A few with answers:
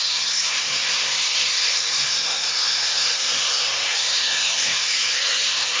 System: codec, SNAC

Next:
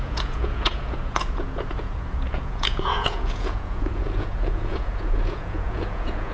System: vocoder, Vocos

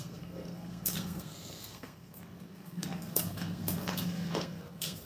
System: codec, SNAC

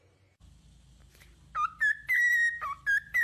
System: none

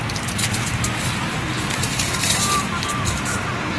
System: none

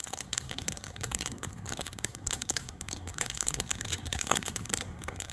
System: codec, SNAC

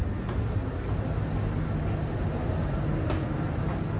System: none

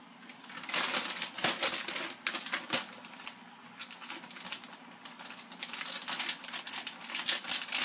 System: none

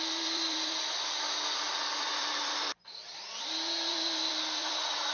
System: vocoder, BigVGAN v2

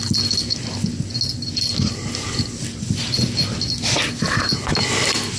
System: none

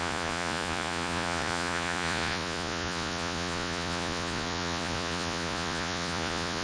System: vocoder, Vocos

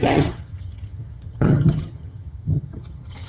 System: vocoder, HiFi-GAN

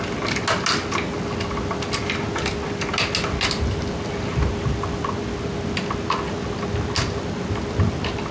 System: none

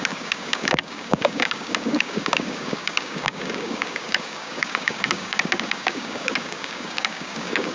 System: codec, DAC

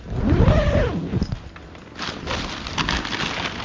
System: none